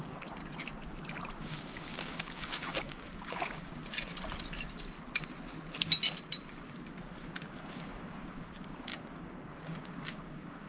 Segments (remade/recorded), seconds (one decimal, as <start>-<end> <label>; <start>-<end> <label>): 0.0-0.4 remade; 0.4-1.4 recorded; 1.4-3.8 remade; 3.8-7.5 recorded; 7.5-10.7 remade